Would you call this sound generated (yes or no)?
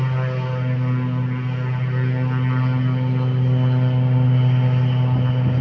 no